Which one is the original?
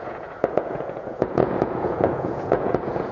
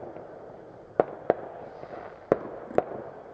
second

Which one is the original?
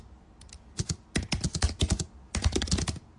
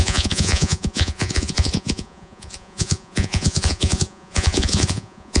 first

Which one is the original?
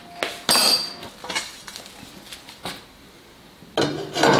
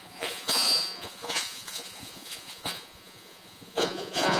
first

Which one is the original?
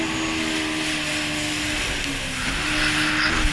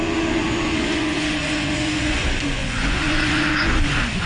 first